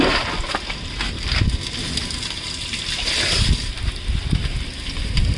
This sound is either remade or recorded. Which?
recorded